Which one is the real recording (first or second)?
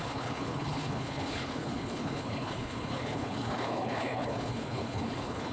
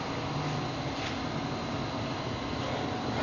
second